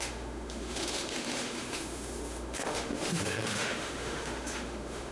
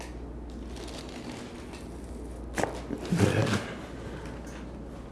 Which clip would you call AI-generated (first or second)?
first